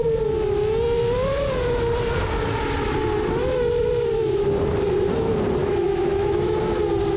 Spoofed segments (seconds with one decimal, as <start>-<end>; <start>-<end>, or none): 5.6-6.6